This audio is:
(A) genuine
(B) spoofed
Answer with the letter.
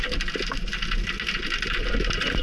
A